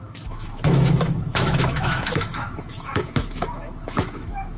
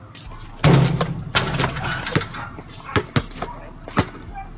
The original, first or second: second